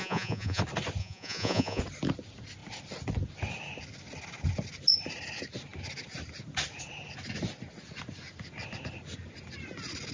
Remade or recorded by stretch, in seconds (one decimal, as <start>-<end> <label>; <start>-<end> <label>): 0.0-0.6 remade; 0.6-1.0 recorded; 1.0-1.8 remade; 1.8-10.1 recorded